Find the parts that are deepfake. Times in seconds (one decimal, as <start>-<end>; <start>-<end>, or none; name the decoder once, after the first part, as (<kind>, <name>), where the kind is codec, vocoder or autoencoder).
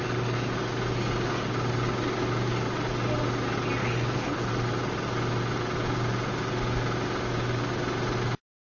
3.8-4.5 (codec, HILCodec)